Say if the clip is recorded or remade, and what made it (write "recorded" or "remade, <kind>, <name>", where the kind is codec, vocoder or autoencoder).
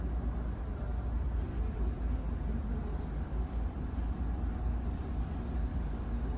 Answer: recorded